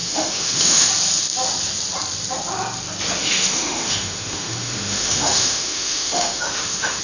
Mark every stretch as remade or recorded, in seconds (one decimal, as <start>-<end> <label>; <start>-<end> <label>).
0.0-0.9 remade; 0.9-3.2 recorded; 3.2-7.0 remade